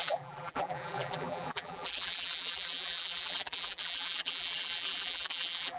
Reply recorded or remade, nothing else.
remade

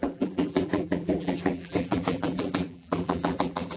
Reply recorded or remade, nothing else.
remade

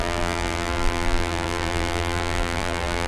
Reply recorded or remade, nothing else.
remade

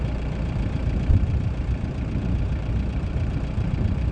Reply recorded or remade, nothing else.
remade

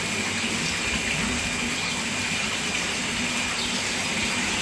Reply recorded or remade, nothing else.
recorded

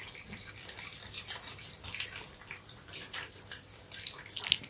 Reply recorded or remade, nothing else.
recorded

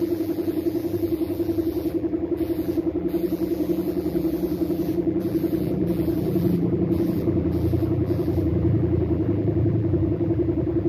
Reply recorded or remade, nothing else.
remade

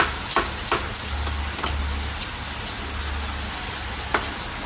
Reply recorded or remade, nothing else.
recorded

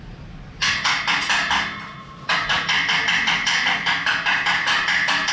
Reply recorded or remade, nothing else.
recorded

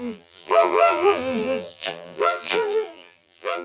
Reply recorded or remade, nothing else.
remade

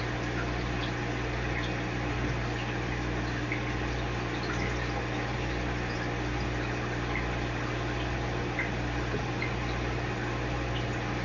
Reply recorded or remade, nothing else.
recorded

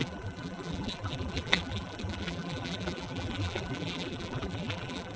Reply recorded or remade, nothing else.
remade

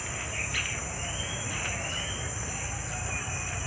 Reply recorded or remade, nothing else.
recorded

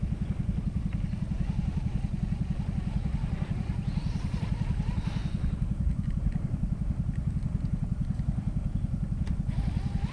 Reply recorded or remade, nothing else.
recorded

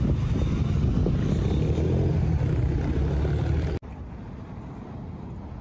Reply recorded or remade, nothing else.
recorded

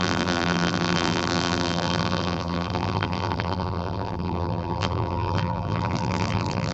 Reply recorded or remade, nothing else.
remade